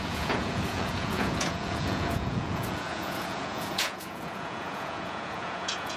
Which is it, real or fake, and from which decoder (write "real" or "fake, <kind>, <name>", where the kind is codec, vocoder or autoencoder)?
fake, vocoder, Vocos